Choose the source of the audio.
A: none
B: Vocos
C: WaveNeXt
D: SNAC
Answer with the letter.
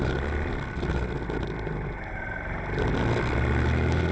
A